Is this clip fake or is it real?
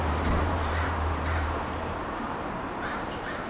fake